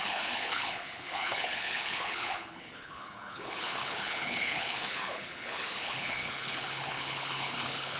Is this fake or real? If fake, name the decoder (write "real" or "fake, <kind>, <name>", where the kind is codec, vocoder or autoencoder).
fake, codec, HILCodec